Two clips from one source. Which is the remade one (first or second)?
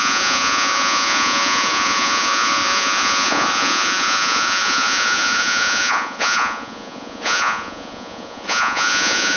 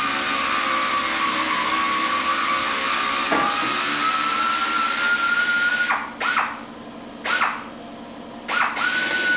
first